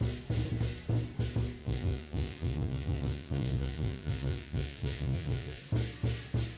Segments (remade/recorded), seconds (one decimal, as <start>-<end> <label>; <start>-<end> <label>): 0.0-1.6 recorded; 1.6-5.6 remade; 5.6-6.6 recorded